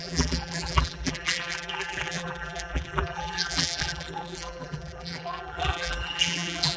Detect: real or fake fake